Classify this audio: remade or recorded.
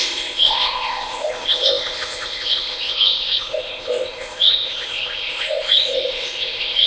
remade